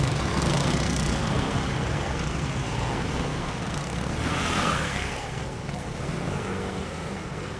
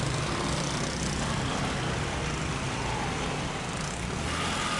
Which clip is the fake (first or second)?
first